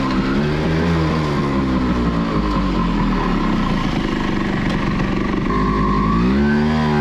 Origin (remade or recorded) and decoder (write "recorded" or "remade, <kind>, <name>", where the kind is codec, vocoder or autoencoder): recorded